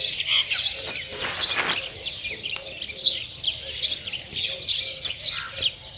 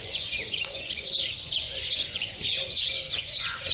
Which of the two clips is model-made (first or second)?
second